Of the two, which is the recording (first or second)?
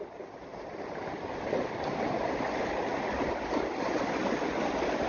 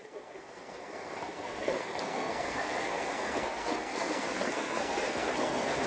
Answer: first